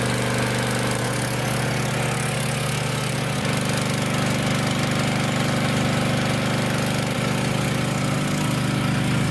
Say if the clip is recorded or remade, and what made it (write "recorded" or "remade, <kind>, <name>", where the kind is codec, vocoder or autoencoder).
recorded